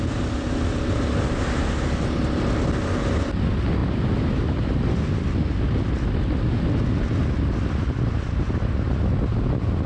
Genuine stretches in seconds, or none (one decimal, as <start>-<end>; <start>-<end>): 0.0-9.9

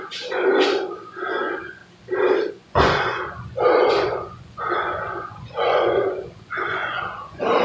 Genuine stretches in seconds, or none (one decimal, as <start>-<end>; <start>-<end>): 1.8-2.5

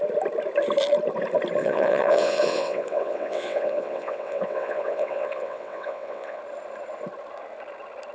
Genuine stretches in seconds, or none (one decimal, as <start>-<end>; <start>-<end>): 0.0-1.6; 6.4-8.1

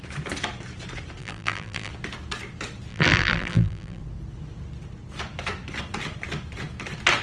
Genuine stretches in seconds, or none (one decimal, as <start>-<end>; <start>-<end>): 0.0-1.2; 1.9-2.9; 4.0-7.2